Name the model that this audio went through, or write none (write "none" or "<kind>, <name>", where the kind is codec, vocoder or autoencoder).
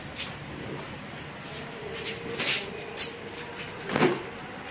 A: none